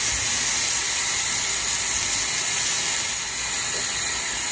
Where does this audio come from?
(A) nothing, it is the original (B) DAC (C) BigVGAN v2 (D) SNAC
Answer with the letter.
A